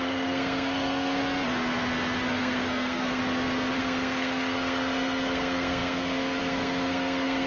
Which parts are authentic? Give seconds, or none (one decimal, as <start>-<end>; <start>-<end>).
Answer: 1.2-2.2; 3.2-3.8